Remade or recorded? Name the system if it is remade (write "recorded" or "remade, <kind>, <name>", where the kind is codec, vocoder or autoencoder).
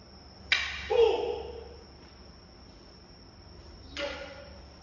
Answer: recorded